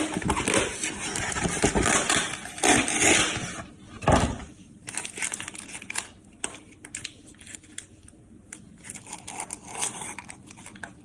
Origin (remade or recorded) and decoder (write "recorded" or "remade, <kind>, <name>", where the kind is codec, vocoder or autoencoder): recorded